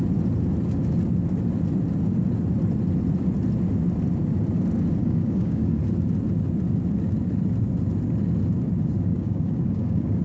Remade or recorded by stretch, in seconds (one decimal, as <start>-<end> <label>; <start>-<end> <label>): 0.0-5.0 recorded; 5.0-5.8 remade; 5.8-9.1 recorded; 9.1-10.2 remade